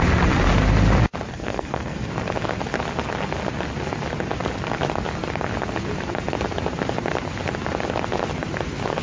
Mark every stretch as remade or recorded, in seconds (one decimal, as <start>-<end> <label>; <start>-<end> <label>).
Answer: 0.0-1.3 recorded; 1.3-2.1 remade; 2.1-9.0 recorded